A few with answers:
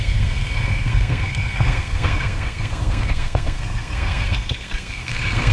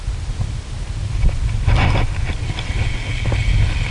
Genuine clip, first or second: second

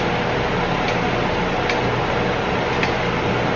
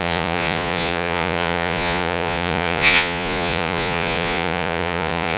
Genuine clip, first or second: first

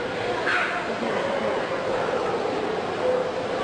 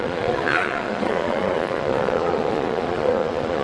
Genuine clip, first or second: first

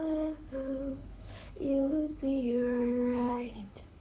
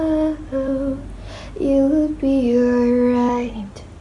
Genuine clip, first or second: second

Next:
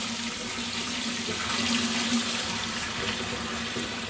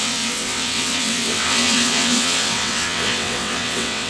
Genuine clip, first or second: first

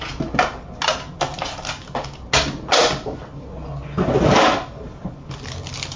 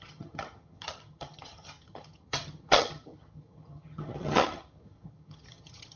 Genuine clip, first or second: first